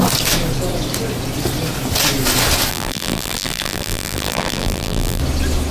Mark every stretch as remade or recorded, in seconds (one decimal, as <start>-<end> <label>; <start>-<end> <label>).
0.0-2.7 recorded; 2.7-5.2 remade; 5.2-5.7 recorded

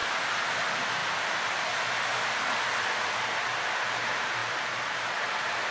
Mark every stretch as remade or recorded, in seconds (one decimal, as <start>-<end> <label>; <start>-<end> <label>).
0.0-0.5 recorded; 0.5-1.0 remade; 1.0-3.8 recorded; 3.8-5.7 remade

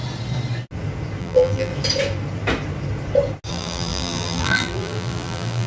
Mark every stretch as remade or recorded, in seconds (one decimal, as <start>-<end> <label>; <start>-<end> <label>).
0.0-1.2 recorded; 1.2-1.7 remade; 1.7-3.5 recorded; 3.5-5.7 remade

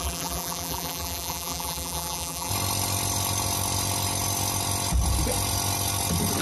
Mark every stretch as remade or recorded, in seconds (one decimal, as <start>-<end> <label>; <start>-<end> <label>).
0.0-2.5 remade; 2.5-6.4 recorded